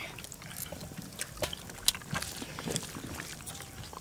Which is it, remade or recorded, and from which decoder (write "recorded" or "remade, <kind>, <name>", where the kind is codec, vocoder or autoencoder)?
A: recorded